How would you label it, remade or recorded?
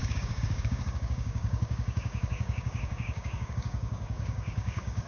remade